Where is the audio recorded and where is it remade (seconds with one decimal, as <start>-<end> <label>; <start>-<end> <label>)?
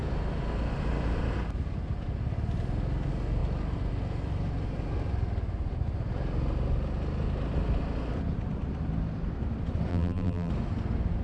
0.0-9.9 recorded; 9.9-10.5 remade; 10.5-11.2 recorded